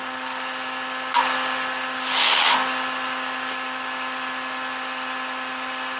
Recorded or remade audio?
recorded